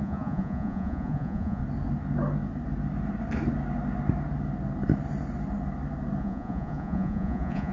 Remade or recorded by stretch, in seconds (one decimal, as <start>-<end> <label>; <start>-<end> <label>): 0.0-1.6 remade; 1.6-6.2 recorded; 6.2-7.7 remade